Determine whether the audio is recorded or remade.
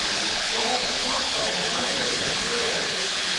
remade